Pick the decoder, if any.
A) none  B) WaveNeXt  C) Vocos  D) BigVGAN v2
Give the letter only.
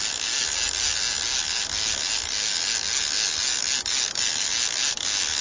A